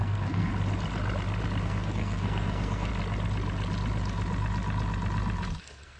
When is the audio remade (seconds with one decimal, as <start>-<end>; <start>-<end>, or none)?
0.0-0.5; 1.6-2.9; 5.6-6.0

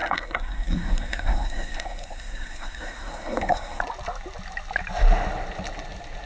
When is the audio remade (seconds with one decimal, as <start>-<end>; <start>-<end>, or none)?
0.0-3.8

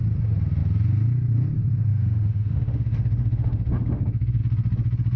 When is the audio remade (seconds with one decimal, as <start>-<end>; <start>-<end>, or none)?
1.9-4.4

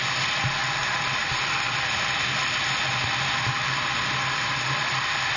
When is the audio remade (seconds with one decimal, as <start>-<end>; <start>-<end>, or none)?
none